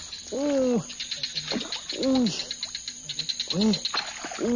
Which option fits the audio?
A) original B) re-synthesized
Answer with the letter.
A